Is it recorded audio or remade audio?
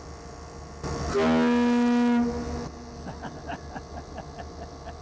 recorded